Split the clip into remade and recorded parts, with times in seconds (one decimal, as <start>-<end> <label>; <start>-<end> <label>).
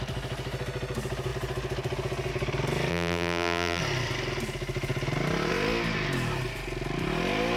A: 0.0-2.9 recorded; 2.9-3.8 remade; 3.8-7.6 recorded